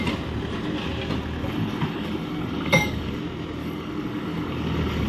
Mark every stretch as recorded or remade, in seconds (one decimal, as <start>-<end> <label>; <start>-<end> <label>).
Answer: 0.0-1.4 recorded; 1.4-3.2 remade; 3.2-3.6 recorded; 3.6-5.1 remade